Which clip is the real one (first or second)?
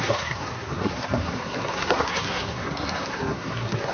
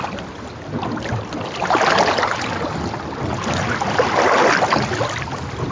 second